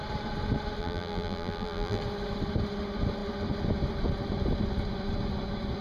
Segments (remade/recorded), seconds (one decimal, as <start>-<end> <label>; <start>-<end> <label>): 0.0-0.8 recorded; 0.8-2.0 remade; 2.0-5.8 recorded